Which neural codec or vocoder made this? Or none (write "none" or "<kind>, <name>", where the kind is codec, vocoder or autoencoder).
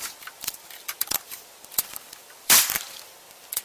vocoder, BigVGAN v2